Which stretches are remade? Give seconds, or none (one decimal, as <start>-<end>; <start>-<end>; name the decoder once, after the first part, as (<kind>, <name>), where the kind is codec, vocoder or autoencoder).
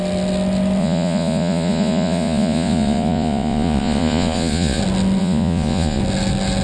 0.8-4.8 (vocoder, Vocos); 5.2-6.0